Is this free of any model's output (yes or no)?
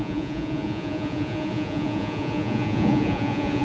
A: no